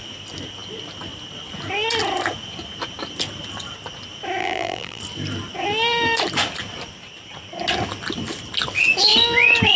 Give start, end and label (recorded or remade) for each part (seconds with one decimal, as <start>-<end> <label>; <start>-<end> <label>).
0.0-4.4 recorded; 4.4-5.0 remade; 5.0-9.8 recorded